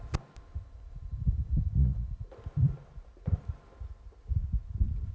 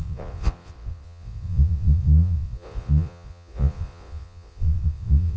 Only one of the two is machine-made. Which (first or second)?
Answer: second